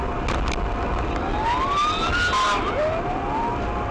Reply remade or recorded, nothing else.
recorded